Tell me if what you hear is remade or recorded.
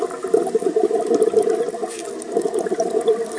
recorded